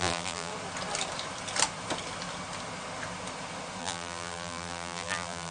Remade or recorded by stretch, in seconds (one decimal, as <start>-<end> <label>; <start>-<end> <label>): 0.0-0.5 remade; 0.5-3.8 recorded; 3.8-5.5 remade